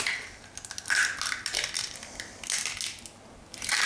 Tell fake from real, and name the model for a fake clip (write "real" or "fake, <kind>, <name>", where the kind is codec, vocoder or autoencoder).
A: real